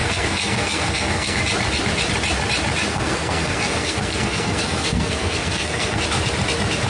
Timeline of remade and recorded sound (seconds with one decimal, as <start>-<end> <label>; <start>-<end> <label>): 0.0-1.4 remade; 1.4-2.9 recorded; 2.9-6.0 remade; 6.0-6.9 recorded